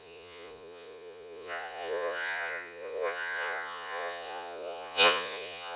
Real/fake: fake